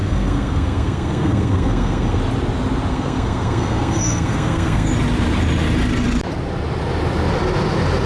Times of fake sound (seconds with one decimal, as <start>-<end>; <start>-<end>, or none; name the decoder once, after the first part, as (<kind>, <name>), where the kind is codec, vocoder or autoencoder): 0.0-2.2 (codec, SNAC); 2.9-4.9